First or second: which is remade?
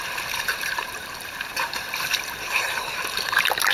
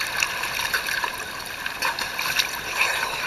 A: first